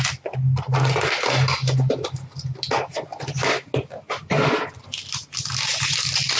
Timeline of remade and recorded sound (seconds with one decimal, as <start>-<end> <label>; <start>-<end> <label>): 0.0-6.4 recorded